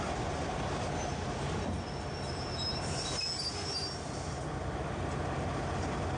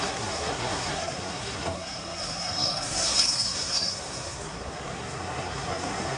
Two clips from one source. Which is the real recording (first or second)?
first